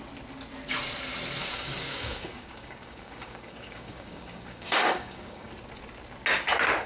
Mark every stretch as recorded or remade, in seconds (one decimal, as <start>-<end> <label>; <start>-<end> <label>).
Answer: 0.0-1.4 recorded; 1.4-5.5 remade; 5.5-6.9 recorded